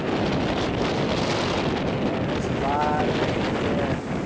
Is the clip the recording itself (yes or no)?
yes